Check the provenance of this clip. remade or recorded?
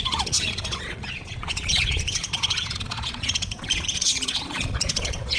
remade